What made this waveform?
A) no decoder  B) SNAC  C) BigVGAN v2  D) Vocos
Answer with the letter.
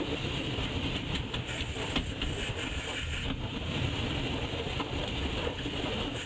A